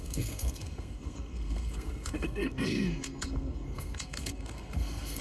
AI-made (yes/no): yes